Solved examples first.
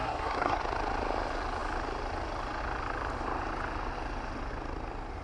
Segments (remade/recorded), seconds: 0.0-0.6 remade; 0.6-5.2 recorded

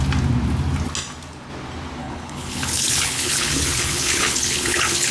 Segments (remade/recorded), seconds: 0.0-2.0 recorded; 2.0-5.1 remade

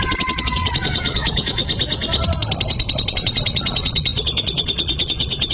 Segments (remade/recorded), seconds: 0.0-1.6 remade; 1.6-3.1 recorded; 3.1-5.5 remade

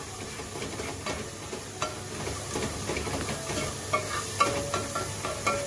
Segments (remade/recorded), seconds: 0.0-5.7 recorded

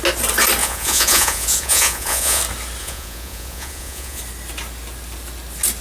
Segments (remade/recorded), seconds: 0.0-0.6 recorded; 0.6-2.4 remade; 2.4-2.8 recorded; 2.8-4.2 remade; 4.2-5.8 recorded

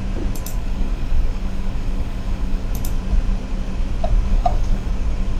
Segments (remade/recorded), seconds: 0.0-0.5 recorded; 0.5-2.7 remade; 2.7-4.3 recorded; 4.3-4.9 remade; 4.9-5.4 recorded